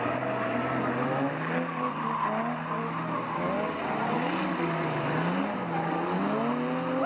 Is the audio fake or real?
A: real